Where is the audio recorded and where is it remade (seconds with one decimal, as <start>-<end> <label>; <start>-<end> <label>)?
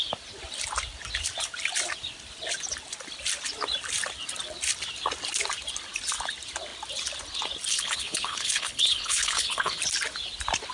0.0-7.7 recorded; 7.7-9.8 remade; 9.8-10.7 recorded